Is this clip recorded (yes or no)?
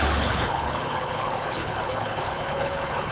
no